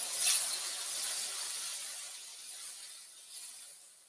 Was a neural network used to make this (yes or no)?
no